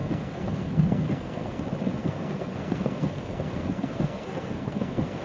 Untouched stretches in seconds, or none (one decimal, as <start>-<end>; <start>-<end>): 1.6-2.0

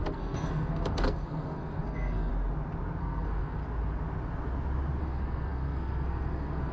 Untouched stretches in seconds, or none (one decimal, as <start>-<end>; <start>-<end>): 2.3-3.0; 3.6-5.0